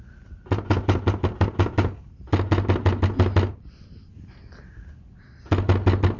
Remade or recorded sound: recorded